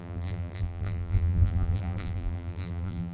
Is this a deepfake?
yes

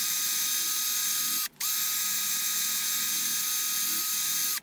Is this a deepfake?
no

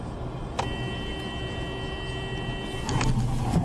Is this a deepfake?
no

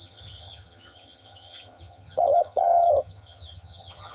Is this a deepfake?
yes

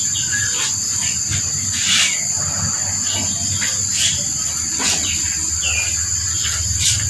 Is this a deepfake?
no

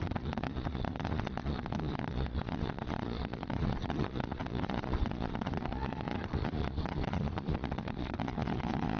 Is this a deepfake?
yes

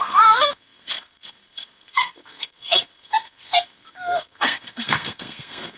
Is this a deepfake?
yes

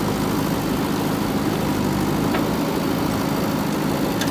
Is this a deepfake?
no